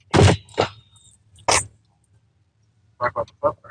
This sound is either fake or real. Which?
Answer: real